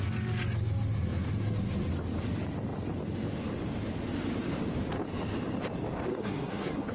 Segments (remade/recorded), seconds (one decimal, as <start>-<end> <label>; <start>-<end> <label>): 0.0-6.1 recorded; 6.1-6.9 remade